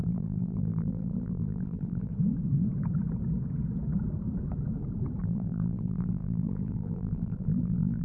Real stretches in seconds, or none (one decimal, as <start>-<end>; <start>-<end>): 2.1-5.2